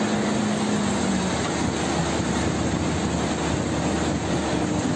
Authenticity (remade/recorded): recorded